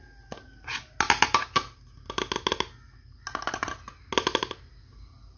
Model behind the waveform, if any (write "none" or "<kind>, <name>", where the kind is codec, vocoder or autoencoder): none